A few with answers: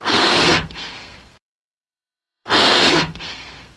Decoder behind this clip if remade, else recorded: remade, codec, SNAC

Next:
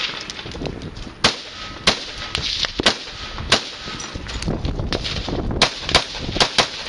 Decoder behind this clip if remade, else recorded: recorded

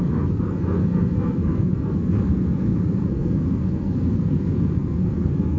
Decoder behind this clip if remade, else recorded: remade, codec, SNAC